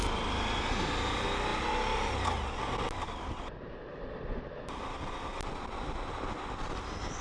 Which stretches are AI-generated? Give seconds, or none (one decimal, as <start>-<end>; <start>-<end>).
none